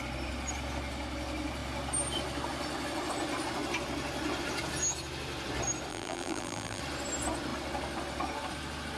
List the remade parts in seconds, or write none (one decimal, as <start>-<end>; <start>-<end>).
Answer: 5.9-6.8